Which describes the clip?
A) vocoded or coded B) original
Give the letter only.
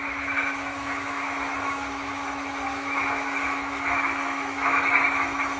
A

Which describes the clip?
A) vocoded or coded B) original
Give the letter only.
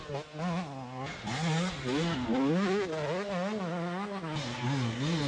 B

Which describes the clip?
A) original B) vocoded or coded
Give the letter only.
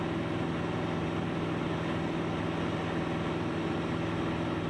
A